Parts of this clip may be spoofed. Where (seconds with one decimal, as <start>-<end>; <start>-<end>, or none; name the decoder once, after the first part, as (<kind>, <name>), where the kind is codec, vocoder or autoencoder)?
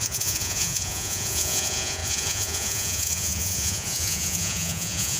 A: 0.0-5.2 (vocoder, Vocos)